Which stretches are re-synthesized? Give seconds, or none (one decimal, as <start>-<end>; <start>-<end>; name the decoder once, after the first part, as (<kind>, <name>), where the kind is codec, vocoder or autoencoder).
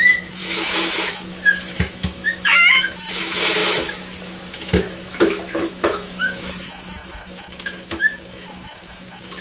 0.0-9.4 (autoencoder, DAC-VAE)